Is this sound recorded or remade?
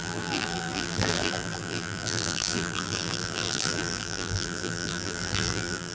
remade